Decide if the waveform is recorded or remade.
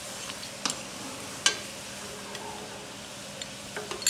recorded